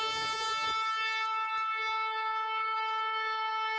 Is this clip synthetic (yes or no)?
no